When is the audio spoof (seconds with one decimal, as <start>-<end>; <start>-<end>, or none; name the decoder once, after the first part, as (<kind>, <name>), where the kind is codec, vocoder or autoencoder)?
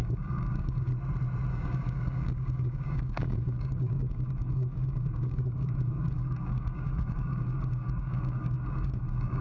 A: 0.0-0.9 (codec, DAC); 1.5-9.4